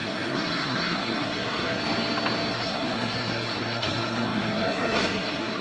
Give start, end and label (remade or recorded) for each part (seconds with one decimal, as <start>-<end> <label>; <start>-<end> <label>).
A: 0.0-1.8 remade; 1.8-2.5 recorded; 2.5-5.6 remade

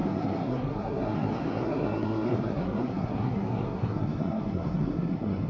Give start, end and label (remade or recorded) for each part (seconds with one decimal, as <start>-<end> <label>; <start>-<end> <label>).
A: 0.0-5.5 remade

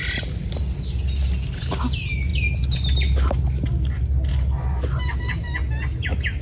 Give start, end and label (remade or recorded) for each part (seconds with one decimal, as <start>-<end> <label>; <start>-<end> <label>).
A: 0.0-6.4 recorded

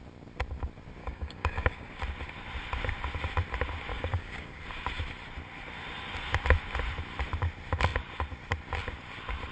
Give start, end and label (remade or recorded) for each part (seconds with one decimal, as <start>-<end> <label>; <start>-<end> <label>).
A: 0.0-1.0 recorded; 1.0-2.0 remade; 2.0-3.9 recorded; 3.9-4.6 remade; 4.6-9.5 recorded

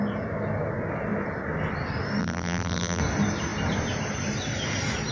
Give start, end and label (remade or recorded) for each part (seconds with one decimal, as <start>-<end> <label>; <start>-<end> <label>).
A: 0.0-2.2 recorded; 2.2-3.0 remade; 3.0-5.1 recorded

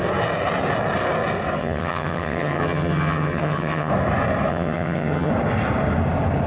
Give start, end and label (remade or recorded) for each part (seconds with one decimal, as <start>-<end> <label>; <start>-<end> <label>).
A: 0.0-1.6 recorded; 1.6-3.9 remade; 3.9-4.5 recorded; 4.5-5.3 remade; 5.3-6.5 recorded

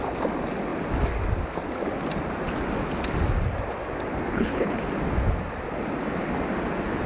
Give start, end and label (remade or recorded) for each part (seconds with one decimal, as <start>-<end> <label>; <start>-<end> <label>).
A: 0.0-4.3 recorded; 4.3-4.8 remade; 4.8-7.1 recorded

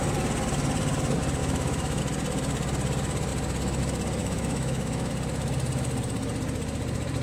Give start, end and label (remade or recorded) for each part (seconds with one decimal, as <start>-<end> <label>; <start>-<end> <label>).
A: 0.0-1.4 recorded; 1.4-2.0 remade; 2.0-4.2 recorded; 4.2-5.1 remade; 5.1-7.2 recorded